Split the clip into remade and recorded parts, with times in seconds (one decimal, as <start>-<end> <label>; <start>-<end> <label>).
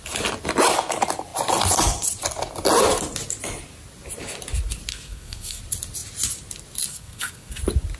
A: 0.0-4.9 recorded; 4.9-5.6 remade; 5.6-6.9 recorded; 6.9-7.6 remade; 7.6-8.0 recorded